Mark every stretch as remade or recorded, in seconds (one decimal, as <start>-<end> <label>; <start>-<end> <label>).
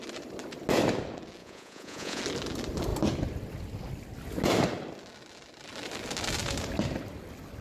0.0-1.4 recorded; 1.4-2.2 remade; 2.2-7.6 recorded